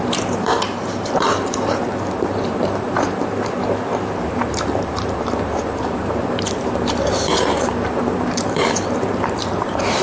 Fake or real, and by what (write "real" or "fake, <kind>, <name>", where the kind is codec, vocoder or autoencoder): fake, vocoder, BigVGAN v2